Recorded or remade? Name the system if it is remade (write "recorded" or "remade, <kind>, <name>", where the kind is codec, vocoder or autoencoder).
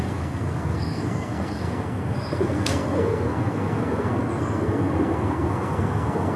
remade, codec, SNAC